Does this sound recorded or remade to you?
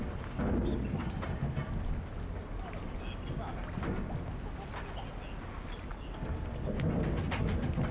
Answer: recorded